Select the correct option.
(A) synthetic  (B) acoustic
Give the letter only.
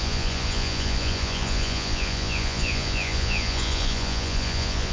A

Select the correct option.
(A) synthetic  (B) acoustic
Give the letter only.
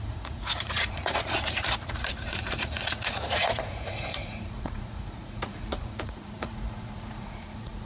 A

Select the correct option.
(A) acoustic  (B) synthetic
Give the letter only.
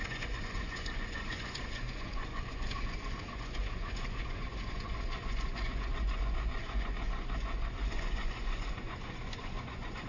B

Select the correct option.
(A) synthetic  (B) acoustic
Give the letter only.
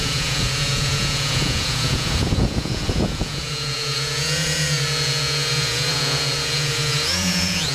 A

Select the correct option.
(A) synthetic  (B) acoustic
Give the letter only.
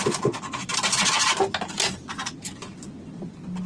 B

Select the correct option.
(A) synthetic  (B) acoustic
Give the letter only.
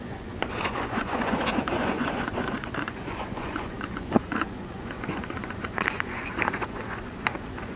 A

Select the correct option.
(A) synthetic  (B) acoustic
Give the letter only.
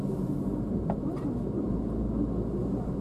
B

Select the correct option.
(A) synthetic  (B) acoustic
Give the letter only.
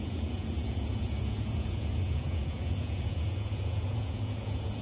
A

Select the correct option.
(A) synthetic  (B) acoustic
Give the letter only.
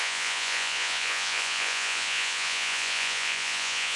A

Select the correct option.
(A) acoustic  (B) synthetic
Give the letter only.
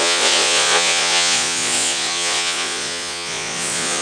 B